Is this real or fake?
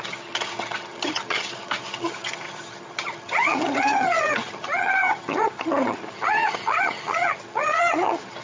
fake